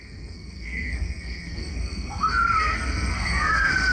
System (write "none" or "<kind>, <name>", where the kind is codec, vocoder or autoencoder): codec, SNAC